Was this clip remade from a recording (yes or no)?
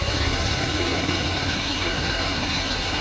yes